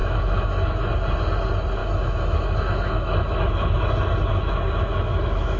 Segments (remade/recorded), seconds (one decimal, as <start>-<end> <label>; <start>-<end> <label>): 0.0-0.9 remade; 0.9-1.8 recorded; 1.8-3.8 remade; 3.8-4.3 recorded; 4.3-5.6 remade